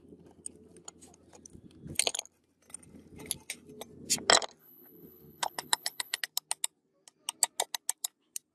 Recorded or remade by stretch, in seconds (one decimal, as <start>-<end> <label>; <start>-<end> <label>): 0.0-4.6 recorded; 4.6-6.2 remade; 6.2-8.5 recorded